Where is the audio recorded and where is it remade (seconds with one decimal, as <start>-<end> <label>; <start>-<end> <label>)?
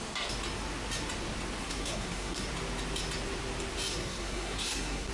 0.0-1.6 recorded; 1.6-2.5 remade; 2.5-3.9 recorded; 3.9-5.1 remade